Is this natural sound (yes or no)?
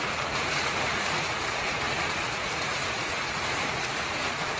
no